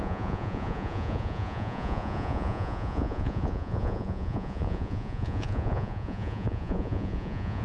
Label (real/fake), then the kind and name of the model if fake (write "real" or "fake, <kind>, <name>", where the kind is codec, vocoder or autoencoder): fake, vocoder, Vocos